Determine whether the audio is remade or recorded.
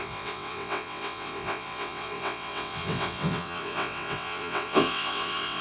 remade